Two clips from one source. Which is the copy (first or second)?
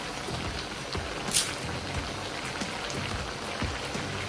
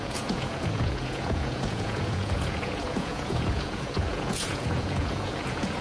second